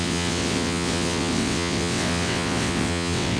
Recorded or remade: remade